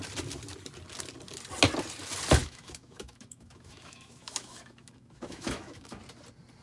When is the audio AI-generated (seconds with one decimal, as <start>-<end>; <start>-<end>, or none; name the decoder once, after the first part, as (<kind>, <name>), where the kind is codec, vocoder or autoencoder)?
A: 2.4-6.0 (autoencoder, DAC-VAE)